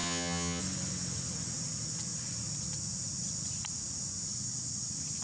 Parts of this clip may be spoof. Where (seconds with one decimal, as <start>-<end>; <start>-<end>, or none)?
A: 0.0-0.6